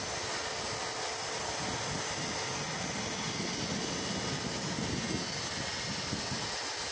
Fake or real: real